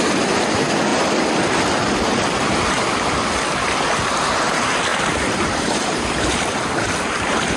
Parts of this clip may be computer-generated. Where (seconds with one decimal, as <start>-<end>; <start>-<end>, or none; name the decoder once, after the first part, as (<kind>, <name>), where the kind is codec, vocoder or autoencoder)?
0.9-2.4 (vocoder, BigVGAN v2); 4.9-7.6